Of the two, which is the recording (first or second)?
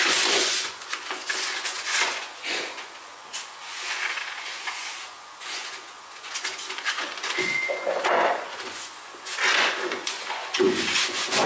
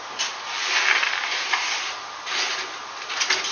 second